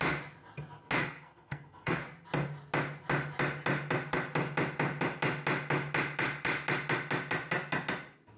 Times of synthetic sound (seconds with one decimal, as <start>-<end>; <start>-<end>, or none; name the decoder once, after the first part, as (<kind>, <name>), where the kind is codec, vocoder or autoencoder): 1.0-2.0 (codec, SNAC)